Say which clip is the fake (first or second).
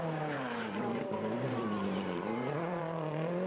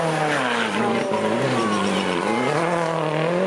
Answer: first